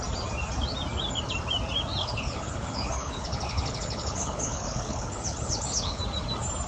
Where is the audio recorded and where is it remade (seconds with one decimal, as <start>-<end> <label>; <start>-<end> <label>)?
0.0-2.0 recorded; 2.0-6.0 remade; 6.0-6.7 recorded